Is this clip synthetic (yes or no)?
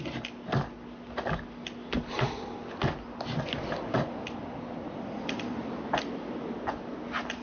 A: no